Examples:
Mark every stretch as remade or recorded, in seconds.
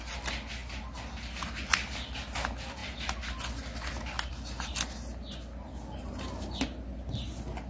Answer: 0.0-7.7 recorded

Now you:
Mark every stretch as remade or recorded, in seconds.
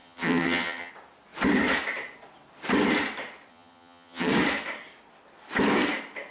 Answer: 0.0-0.9 remade; 0.9-3.5 recorded; 3.5-4.3 remade; 4.3-6.3 recorded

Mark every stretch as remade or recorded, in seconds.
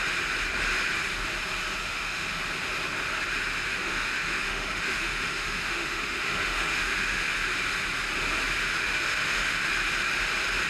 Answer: 0.0-1.8 recorded; 1.8-2.4 remade; 2.4-3.7 recorded; 3.7-7.3 remade; 7.3-8.7 recorded; 8.7-9.7 remade; 9.7-10.7 recorded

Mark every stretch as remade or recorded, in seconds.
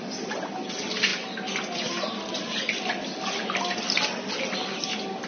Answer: 0.0-5.3 recorded